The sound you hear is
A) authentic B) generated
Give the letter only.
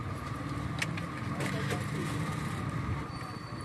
A